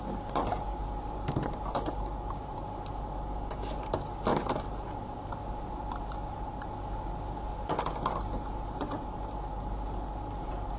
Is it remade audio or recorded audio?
recorded